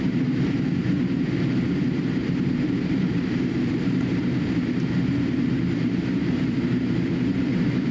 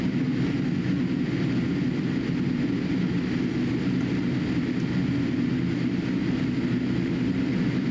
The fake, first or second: first